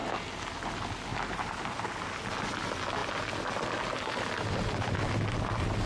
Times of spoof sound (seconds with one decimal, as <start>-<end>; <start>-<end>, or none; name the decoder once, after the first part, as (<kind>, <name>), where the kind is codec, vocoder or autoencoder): 1.1-1.9 (vocoder, BigVGAN v2)